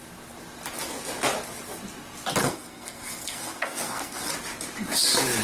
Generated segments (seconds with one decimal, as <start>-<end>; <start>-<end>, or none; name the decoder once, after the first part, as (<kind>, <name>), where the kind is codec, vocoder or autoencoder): 2.4-4.3 (codec, SNAC)